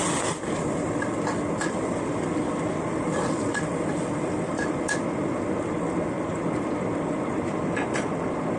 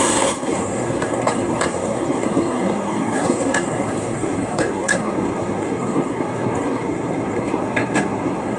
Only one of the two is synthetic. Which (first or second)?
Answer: second